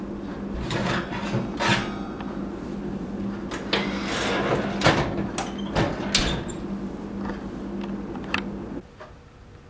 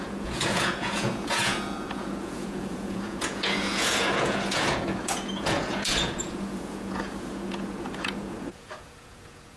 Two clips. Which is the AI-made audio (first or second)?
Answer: second